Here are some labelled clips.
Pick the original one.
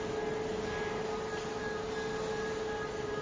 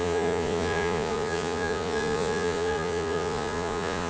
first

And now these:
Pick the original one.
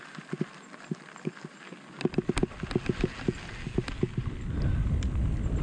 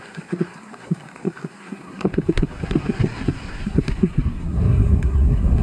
first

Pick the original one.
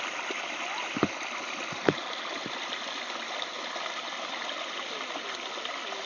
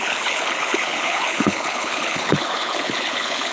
first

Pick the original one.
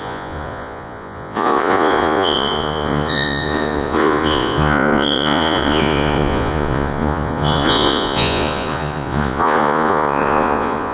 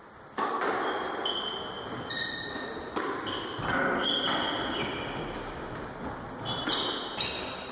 second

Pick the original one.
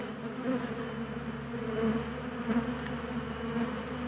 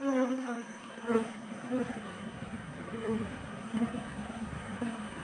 first